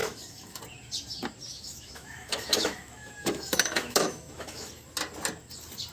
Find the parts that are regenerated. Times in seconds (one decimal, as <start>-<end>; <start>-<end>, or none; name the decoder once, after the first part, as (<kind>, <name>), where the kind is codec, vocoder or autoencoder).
0.0-0.6 (autoencoder, DAC-VAE); 1.5-4.7